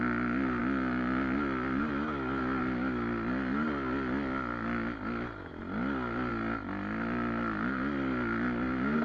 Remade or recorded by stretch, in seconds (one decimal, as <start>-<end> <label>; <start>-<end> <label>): 0.0-9.0 recorded